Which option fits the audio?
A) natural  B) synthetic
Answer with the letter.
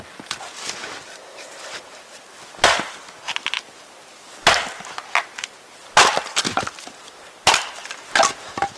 A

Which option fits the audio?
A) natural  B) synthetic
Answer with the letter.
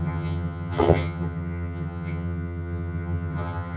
B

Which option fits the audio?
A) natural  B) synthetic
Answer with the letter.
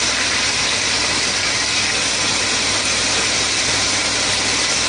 A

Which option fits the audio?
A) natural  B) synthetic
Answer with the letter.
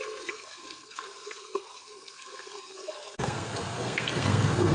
B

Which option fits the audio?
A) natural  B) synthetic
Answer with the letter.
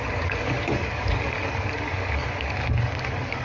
B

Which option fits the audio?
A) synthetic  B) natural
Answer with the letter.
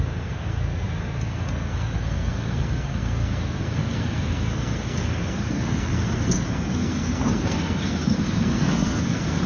A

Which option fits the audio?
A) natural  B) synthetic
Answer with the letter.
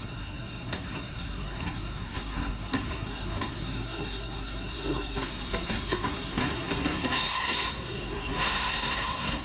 B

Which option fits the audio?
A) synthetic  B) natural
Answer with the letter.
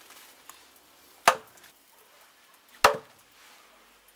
B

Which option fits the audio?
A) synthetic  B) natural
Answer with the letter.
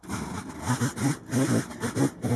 B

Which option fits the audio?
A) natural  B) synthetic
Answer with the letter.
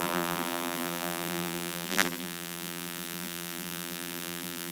B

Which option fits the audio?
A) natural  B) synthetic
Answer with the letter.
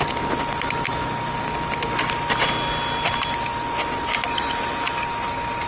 A